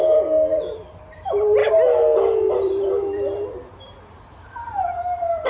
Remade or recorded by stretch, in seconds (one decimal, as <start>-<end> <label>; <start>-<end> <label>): 0.0-1.6 remade; 1.6-2.5 recorded; 2.5-5.5 remade